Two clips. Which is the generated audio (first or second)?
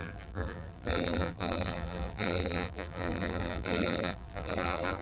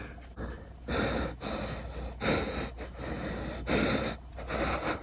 first